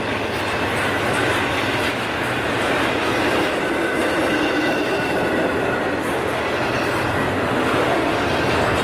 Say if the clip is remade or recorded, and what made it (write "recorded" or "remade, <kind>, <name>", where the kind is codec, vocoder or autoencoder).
recorded